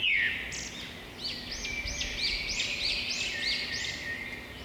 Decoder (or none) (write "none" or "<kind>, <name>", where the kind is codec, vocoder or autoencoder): none